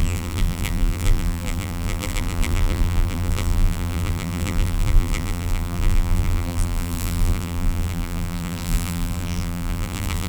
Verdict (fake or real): fake